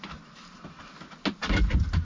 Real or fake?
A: real